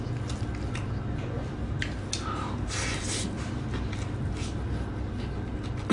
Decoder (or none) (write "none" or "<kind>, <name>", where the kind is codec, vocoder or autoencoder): none